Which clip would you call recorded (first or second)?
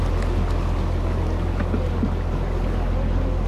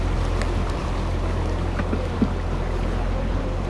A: first